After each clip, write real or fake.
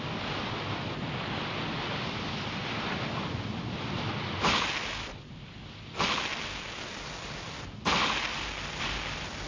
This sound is real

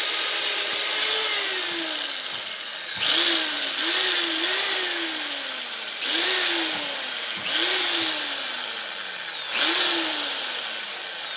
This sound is real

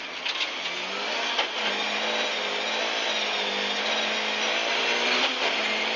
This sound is real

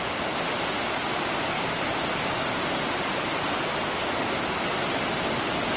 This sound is real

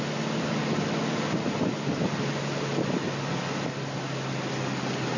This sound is real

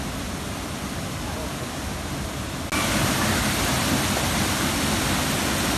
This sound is real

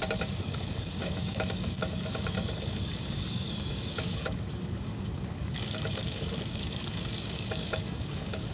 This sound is fake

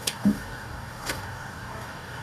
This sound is fake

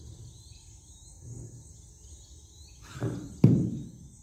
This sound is real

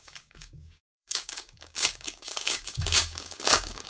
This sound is fake